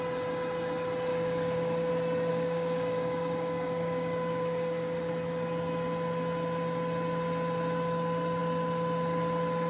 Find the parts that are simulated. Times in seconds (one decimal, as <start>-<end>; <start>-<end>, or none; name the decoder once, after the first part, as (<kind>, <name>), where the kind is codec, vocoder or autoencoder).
1.1-1.9 (codec, DAC); 2.3-5.1